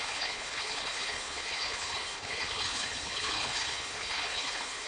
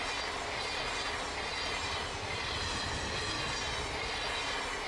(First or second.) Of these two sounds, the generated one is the first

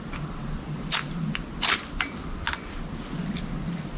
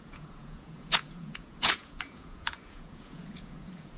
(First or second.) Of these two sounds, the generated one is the second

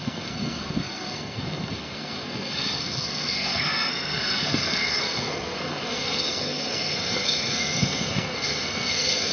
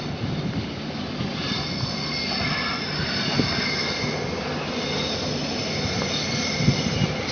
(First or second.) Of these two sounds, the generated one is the first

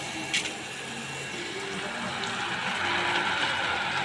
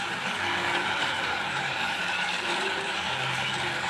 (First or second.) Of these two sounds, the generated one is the second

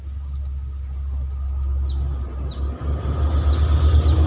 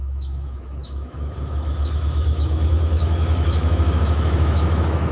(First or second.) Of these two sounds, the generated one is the second